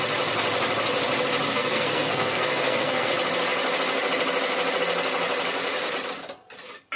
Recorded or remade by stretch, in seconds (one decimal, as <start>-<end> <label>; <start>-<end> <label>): 0.0-1.5 recorded; 1.5-3.1 remade; 3.1-7.0 recorded